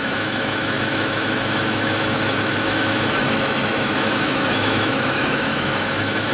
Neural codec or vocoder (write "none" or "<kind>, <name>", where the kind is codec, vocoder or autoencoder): autoencoder, DAC-VAE